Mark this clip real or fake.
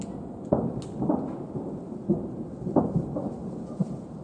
real